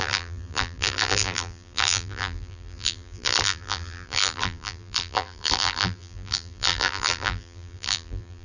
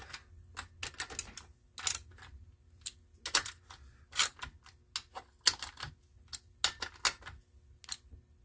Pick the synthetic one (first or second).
first